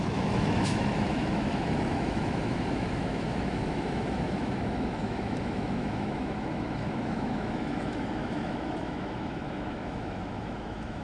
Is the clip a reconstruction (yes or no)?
yes